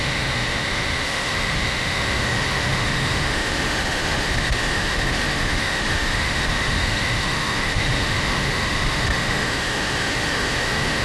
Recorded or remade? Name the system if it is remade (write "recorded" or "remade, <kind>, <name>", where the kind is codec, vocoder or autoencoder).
remade, autoencoder, DAC-VAE